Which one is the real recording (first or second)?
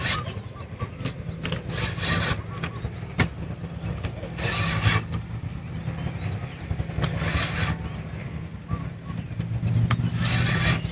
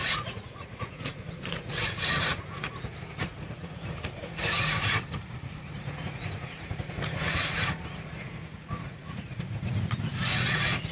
first